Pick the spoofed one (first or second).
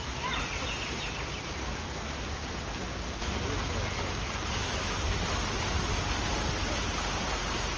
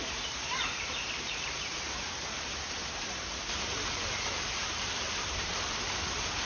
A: second